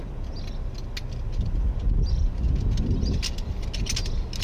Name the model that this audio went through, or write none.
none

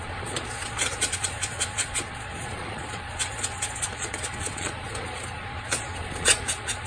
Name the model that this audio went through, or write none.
vocoder, Vocos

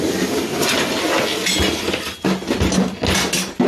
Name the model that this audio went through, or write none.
none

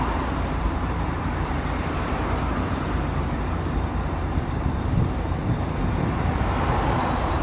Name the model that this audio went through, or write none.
vocoder, BigVGAN v2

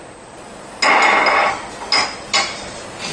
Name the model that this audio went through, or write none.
none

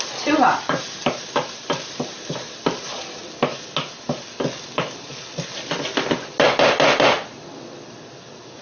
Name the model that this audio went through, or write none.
none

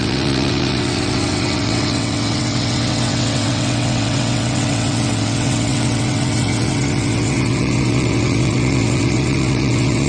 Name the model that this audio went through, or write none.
vocoder, WaveNeXt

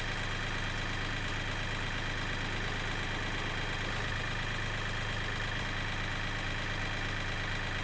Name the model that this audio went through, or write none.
none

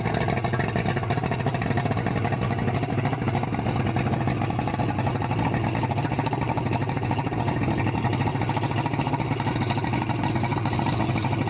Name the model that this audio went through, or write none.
none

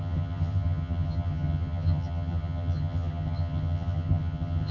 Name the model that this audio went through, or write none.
vocoder, HiFi-GAN